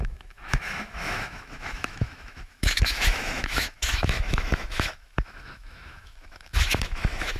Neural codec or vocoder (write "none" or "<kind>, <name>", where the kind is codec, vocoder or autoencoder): autoencoder, DAC-VAE